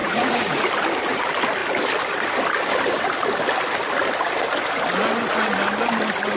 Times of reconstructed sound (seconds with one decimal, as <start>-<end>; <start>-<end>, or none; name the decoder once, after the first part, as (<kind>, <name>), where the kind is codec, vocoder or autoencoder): 0.0-0.7 (vocoder, Vocos)